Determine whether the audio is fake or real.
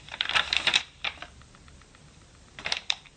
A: fake